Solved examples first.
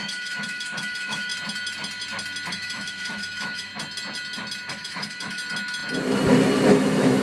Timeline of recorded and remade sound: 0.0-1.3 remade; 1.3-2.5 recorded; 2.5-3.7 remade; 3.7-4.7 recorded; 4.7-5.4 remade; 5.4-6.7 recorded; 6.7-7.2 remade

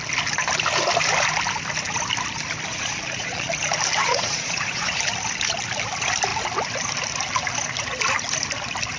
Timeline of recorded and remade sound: 0.0-2.7 recorded; 2.7-3.5 remade; 3.5-4.0 recorded; 4.0-5.0 remade; 5.0-9.0 recorded